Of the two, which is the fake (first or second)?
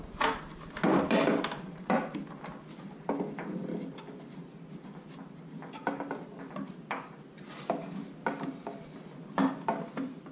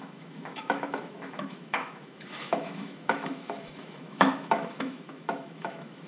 second